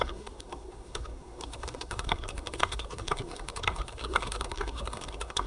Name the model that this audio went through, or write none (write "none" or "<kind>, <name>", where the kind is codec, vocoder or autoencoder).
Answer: codec, SNAC